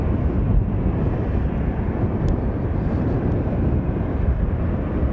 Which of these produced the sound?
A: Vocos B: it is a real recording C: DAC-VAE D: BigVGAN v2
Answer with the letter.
B